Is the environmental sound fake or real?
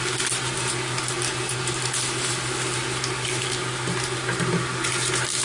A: real